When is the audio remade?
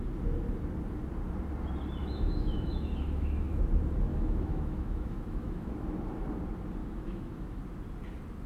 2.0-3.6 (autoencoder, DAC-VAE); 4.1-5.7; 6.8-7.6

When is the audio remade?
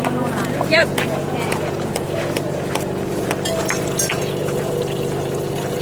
0.0-5.8 (vocoder, Vocos)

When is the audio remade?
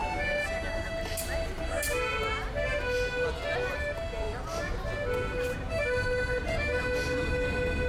none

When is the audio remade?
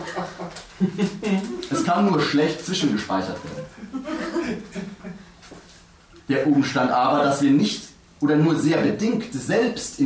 none